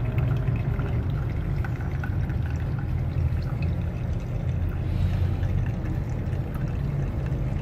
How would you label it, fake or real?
real